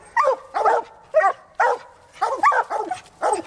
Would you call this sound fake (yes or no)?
no